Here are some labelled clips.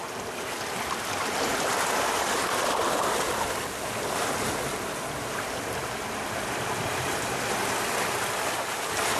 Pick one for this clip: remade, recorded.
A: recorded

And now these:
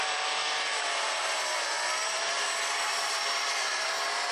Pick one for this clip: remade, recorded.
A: remade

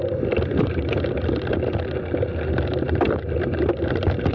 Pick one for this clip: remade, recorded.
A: recorded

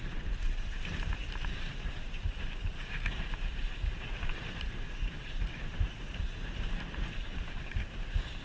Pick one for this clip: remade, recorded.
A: remade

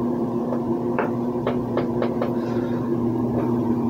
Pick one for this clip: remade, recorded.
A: remade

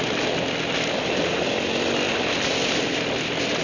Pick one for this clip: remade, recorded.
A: recorded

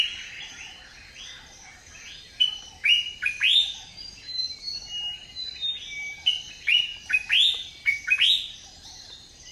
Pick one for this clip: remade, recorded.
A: recorded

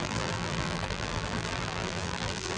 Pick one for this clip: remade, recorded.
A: remade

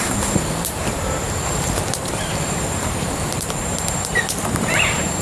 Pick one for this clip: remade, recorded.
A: remade